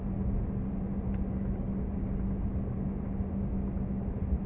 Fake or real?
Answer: real